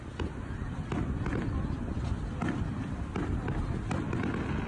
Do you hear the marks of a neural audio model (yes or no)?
no